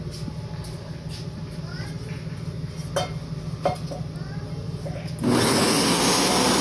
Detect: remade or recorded recorded